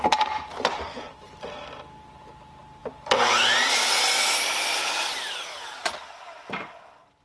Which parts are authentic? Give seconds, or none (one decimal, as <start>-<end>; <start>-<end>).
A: 0.0-0.5; 2.2-2.8; 4.4-7.2